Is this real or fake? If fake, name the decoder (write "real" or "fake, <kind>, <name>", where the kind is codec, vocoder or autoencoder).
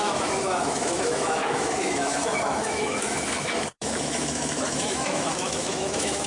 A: fake, autoencoder, DAC-VAE